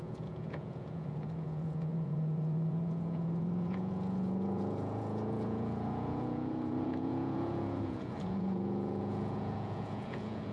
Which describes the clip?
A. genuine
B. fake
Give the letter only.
B